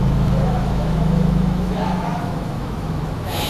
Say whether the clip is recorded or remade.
remade